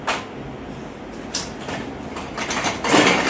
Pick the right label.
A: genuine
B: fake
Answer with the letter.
A